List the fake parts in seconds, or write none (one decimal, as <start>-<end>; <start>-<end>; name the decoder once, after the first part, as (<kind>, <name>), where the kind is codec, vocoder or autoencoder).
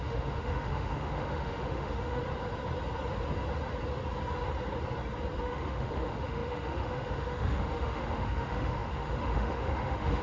0.0-2.2 (autoencoder, DAC-VAE); 5.4-10.2